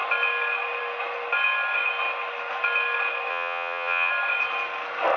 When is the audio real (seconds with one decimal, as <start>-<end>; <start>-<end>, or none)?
0.0-3.3; 4.1-5.2